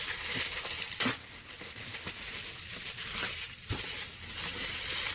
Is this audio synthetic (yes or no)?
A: no